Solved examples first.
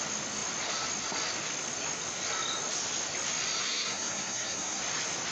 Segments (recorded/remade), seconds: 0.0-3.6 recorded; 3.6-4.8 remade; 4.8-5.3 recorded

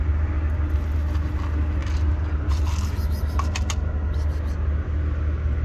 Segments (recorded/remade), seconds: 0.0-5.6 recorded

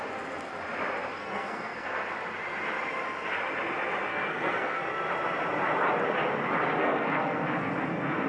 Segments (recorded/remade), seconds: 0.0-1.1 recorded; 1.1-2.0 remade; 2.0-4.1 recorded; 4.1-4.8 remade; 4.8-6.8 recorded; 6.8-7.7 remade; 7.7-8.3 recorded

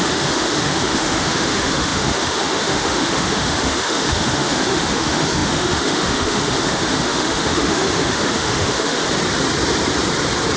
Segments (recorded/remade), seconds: 0.0-9.0 remade; 9.0-10.6 recorded

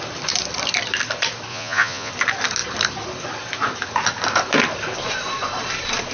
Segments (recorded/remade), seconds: 0.0-1.5 recorded; 1.5-2.1 remade; 2.1-6.1 recorded

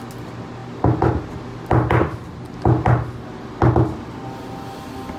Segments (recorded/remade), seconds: 0.0-5.2 recorded